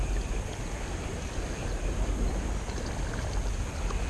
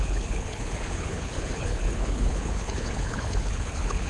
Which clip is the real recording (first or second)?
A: first